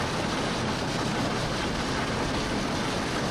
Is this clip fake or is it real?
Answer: real